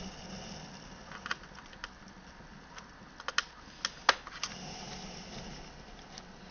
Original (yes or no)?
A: yes